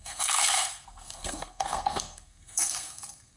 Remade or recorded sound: remade